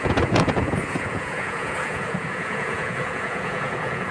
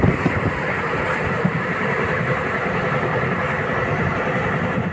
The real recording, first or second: second